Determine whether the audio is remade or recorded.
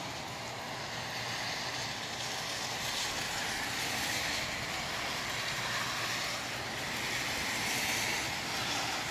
recorded